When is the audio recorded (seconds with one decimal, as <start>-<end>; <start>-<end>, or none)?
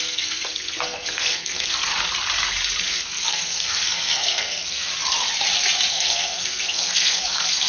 1.9-2.8; 4.9-5.9